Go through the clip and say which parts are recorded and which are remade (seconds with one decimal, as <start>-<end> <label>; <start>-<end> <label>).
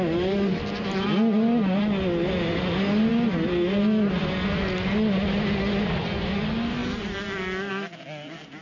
0.0-8.6 recorded